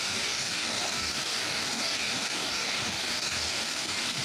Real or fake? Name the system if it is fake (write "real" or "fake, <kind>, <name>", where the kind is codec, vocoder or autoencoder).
fake, codec, DAC